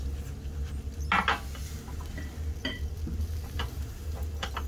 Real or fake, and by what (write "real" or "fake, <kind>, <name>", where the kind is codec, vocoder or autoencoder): real